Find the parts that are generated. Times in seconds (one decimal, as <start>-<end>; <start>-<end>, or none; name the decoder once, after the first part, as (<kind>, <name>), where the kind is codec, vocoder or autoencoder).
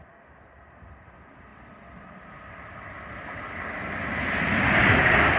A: none